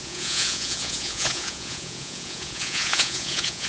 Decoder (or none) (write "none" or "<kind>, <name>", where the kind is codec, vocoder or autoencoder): vocoder, Vocos